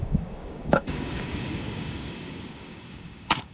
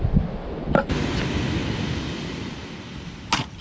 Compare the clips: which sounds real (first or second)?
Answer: second